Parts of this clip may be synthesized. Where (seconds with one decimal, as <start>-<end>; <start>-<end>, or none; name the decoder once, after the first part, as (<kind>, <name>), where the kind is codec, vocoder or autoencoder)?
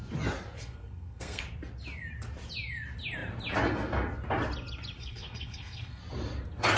0.6-1.4 (codec, SNAC); 5.0-6.0